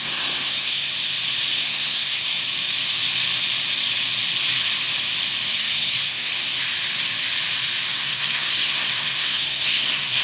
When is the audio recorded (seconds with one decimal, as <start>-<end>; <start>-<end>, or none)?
0.9-1.5; 2.4-5.5; 6.3-7.9